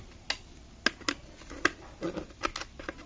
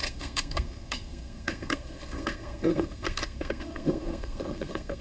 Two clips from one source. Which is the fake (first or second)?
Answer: second